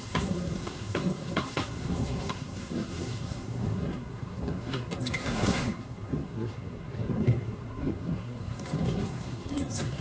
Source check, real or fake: fake